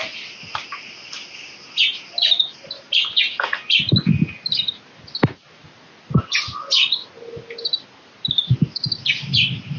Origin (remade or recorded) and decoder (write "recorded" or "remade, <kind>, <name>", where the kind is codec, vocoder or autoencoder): recorded